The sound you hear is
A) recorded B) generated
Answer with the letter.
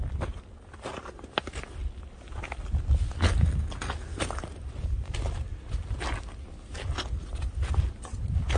A